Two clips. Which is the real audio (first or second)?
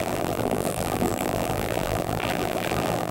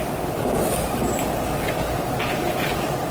second